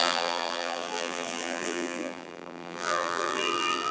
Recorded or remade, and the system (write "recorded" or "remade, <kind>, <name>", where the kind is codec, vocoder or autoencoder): remade, vocoder, BigVGAN v2